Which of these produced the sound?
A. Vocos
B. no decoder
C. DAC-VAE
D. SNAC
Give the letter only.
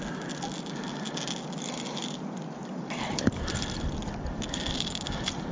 B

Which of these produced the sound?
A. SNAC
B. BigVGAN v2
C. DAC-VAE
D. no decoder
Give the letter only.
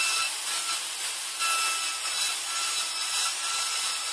D